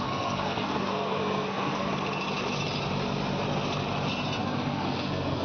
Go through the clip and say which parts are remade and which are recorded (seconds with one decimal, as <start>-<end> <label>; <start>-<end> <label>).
0.0-1.9 remade; 1.9-4.4 recorded; 4.4-5.4 remade